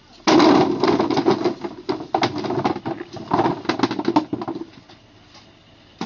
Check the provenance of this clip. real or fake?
real